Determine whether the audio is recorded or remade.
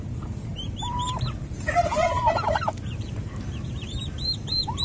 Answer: remade